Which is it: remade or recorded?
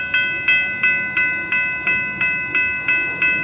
recorded